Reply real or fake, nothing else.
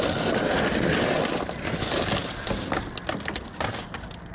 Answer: real